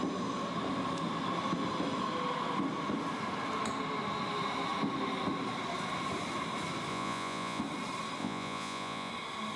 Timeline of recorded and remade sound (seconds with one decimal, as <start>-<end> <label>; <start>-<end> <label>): 0.0-6.9 recorded; 6.9-7.6 remade; 7.6-8.2 recorded; 8.2-9.1 remade; 9.1-9.6 recorded

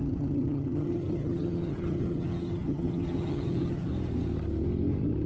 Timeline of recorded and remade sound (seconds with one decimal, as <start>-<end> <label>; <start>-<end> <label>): 0.0-3.9 remade; 3.9-5.3 recorded

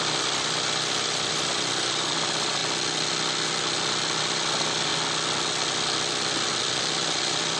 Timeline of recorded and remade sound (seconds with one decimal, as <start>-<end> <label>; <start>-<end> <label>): 0.0-2.6 remade; 2.6-4.2 recorded; 4.2-4.9 remade; 4.9-6.6 recorded; 6.6-7.6 remade

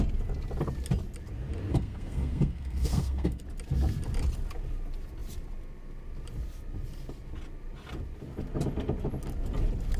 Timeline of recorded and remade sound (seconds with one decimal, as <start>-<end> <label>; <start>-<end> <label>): 0.0-1.7 recorded; 1.7-3.4 remade; 3.4-10.0 recorded